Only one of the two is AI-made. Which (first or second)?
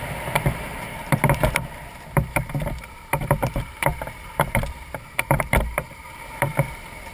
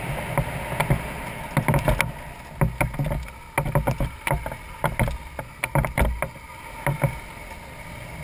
first